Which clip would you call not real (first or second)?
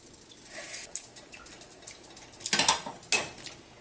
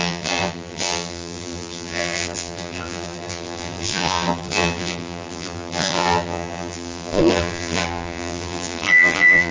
second